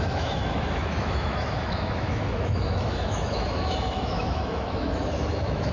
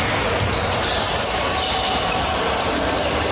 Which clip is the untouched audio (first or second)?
second